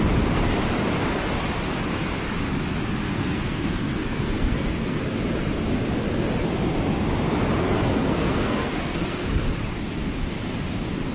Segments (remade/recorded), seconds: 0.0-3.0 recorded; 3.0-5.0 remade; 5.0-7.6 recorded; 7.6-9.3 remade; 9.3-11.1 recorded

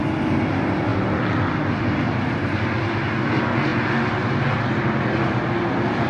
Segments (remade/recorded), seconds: 0.0-6.1 recorded

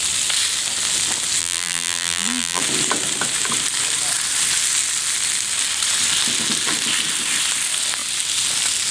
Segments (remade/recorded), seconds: 0.0-1.4 recorded; 1.4-2.6 remade; 2.6-8.9 recorded

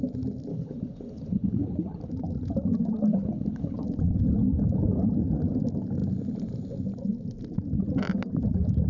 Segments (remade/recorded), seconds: 0.0-0.5 recorded; 0.5-2.1 remade; 2.1-3.1 recorded; 3.1-3.8 remade; 3.8-8.9 recorded

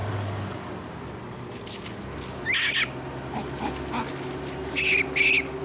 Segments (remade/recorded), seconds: 0.0-0.7 remade; 0.7-5.6 recorded